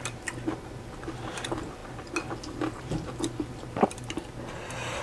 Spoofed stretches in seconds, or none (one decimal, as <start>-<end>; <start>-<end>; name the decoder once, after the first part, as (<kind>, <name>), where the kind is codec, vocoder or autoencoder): none